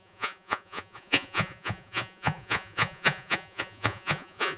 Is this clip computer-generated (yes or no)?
yes